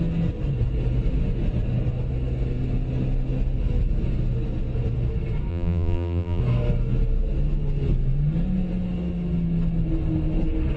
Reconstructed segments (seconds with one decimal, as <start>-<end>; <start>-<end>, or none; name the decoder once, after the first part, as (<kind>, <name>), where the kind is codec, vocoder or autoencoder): 5.5-6.4 (vocoder, BigVGAN v2)